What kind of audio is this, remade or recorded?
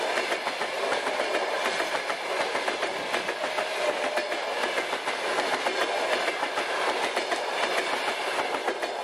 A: recorded